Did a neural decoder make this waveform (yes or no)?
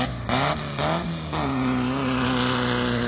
no